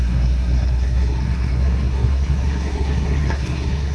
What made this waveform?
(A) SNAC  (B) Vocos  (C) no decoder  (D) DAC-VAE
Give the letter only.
A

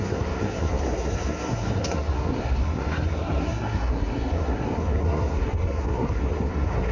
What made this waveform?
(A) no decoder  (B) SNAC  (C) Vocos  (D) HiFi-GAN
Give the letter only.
B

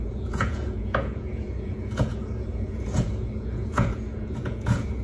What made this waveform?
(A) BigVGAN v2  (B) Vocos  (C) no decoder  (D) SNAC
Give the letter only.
B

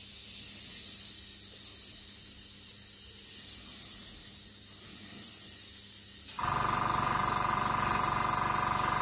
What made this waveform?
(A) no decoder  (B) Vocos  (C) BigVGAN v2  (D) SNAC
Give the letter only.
A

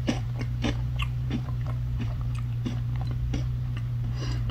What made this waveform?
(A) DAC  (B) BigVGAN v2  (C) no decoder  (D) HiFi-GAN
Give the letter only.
B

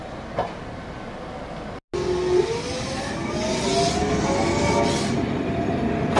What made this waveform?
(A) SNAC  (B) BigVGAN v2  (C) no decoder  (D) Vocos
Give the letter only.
C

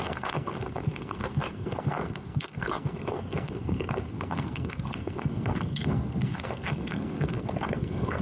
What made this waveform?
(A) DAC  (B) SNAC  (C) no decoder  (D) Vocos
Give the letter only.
B